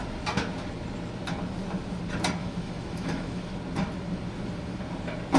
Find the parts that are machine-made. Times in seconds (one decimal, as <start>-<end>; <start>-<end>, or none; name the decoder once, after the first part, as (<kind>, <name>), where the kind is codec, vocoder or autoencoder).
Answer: 2.4-3.5 (autoencoder, DAC-VAE)